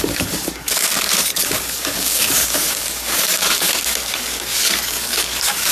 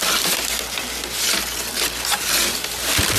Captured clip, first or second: second